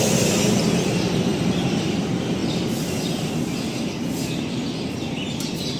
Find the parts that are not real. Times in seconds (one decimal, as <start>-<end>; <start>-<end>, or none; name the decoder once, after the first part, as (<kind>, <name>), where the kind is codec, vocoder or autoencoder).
none